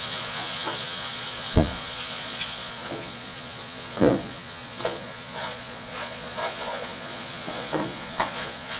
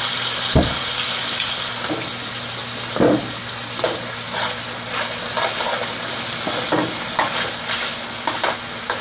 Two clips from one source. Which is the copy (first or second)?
first